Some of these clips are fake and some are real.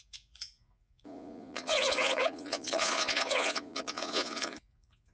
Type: fake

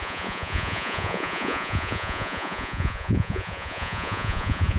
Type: fake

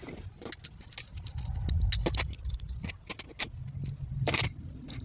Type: real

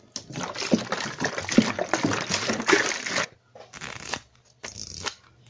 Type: real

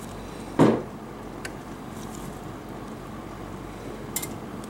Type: real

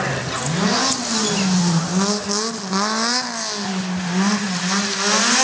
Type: real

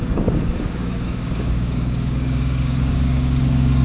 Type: fake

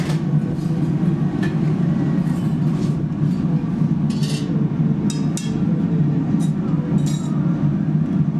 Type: real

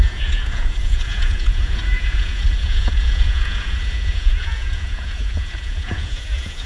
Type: fake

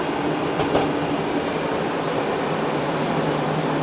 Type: real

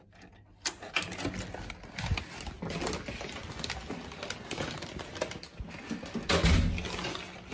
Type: real